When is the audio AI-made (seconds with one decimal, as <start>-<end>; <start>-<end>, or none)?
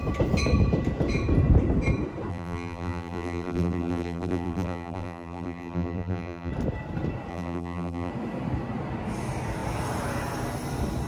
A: 2.3-6.5; 7.3-8.1